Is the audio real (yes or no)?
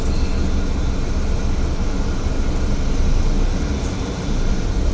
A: yes